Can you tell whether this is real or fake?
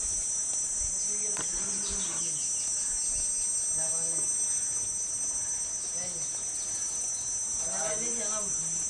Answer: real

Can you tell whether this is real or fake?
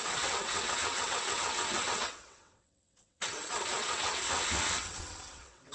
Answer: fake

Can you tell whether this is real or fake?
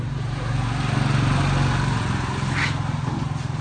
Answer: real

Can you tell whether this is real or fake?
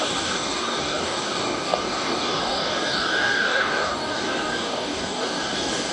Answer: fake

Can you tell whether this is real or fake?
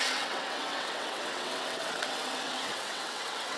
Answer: fake